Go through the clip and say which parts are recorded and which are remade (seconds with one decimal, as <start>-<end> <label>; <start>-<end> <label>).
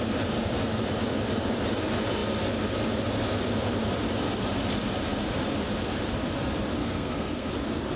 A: 0.0-6.8 recorded; 6.8-7.5 remade; 7.5-8.0 recorded